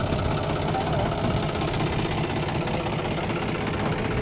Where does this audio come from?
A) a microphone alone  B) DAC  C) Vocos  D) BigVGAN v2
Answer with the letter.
A